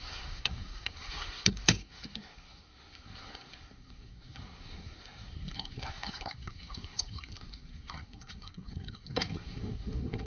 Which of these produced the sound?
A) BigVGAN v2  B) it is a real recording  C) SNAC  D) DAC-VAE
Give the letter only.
C